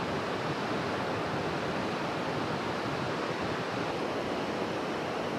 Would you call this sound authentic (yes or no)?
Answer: yes